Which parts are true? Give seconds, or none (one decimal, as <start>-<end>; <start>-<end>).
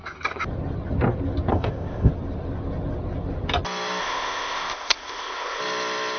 0.0-1.5; 2.1-4.0; 5.6-6.2